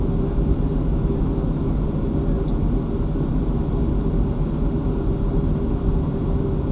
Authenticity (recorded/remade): recorded